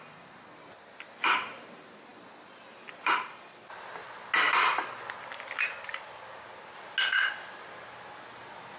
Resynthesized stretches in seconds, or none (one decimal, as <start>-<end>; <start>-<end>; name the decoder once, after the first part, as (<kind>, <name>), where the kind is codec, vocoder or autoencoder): none